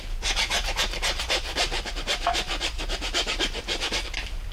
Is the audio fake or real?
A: real